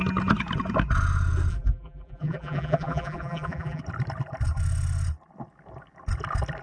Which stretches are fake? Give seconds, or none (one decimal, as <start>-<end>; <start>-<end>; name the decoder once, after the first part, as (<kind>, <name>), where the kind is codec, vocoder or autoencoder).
1.5-3.8 (vocoder, BigVGAN v2)